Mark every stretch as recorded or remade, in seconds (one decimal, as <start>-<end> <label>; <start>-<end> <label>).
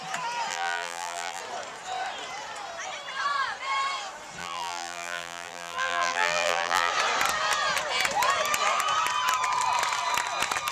0.0-0.5 recorded; 0.5-1.4 remade; 1.4-4.4 recorded; 4.4-6.9 remade; 6.9-10.7 recorded